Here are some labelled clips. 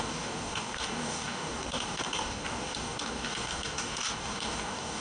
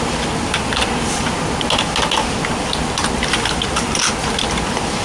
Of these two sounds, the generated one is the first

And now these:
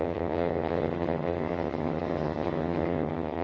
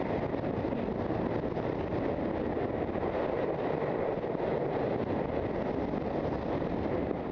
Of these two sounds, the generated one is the first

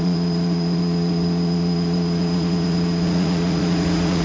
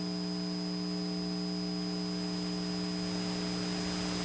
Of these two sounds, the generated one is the first